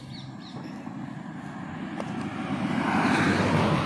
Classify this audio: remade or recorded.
recorded